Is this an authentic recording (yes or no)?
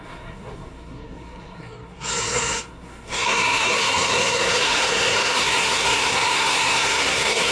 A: no